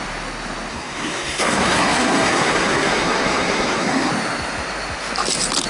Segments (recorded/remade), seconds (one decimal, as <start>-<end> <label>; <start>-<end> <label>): 0.0-0.7 recorded; 0.7-4.1 remade; 4.1-5.7 recorded